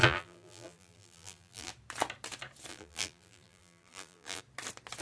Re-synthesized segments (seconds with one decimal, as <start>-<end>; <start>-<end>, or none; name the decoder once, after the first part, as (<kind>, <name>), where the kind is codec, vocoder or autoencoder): 0.0-1.7 (vocoder, BigVGAN v2); 2.7-4.4